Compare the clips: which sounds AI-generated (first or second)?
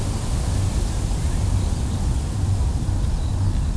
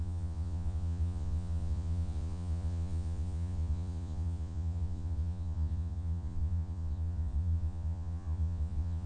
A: second